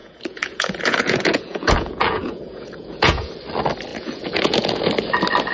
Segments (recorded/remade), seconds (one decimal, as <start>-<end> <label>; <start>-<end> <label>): 0.0-3.3 remade; 3.3-3.9 recorded; 3.9-4.8 remade; 4.8-5.5 recorded